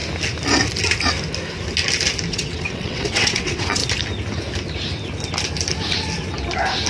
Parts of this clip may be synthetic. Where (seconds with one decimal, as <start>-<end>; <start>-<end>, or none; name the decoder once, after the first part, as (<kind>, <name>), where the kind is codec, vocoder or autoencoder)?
2.3-3.8 (vocoder, WaveNeXt)